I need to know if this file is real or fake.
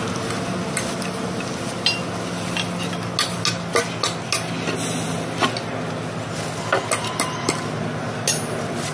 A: real